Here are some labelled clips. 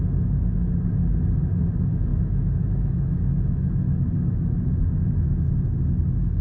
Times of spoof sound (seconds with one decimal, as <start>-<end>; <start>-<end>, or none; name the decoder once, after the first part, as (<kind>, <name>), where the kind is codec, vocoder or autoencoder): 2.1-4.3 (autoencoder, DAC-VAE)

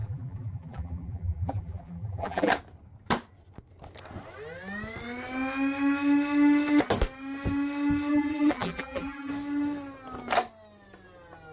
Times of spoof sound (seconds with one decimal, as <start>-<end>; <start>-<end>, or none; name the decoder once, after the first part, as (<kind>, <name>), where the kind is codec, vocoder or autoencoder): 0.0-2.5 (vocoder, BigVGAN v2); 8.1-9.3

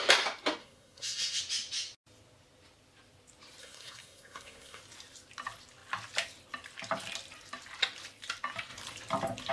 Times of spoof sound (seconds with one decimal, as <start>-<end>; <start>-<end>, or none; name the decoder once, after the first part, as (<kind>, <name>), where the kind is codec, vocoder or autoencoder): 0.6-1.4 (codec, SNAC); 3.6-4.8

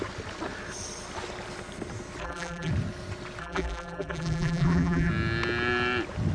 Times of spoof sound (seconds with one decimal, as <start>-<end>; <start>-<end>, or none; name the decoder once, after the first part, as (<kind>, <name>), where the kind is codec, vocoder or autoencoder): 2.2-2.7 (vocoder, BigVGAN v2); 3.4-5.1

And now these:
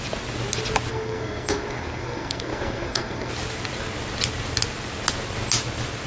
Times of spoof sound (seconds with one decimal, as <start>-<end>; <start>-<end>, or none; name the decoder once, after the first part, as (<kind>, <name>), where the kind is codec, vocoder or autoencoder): 0.9-3.3 (codec, SNAC)